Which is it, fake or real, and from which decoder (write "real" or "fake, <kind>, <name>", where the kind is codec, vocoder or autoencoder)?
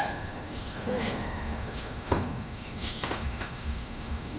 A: fake, autoencoder, DAC-VAE